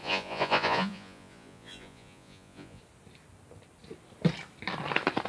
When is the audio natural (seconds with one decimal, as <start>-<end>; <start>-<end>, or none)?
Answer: 2.8-5.3